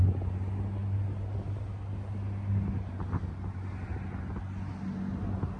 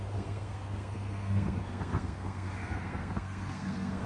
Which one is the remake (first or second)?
second